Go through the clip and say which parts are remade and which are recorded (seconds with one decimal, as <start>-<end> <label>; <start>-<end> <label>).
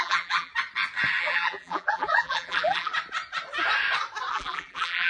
0.0-0.5 remade; 0.5-1.2 recorded; 1.2-2.9 remade; 2.9-4.3 recorded; 4.3-5.1 remade